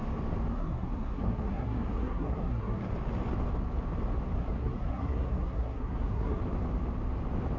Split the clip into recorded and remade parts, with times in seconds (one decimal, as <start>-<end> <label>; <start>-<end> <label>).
0.0-0.5 recorded; 0.5-2.9 remade; 2.9-4.4 recorded; 4.4-6.4 remade; 6.4-7.6 recorded